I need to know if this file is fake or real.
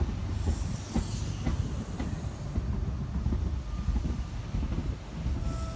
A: real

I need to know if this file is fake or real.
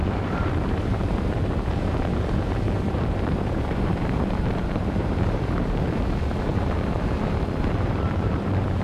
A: fake